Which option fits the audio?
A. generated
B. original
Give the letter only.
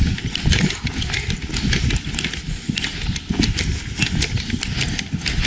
B